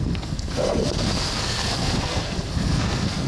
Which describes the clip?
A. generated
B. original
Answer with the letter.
A